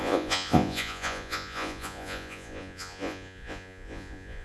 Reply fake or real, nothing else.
fake